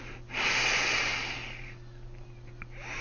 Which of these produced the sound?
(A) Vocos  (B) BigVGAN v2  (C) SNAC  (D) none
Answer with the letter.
D